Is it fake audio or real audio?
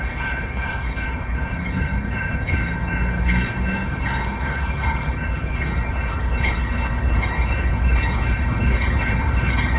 fake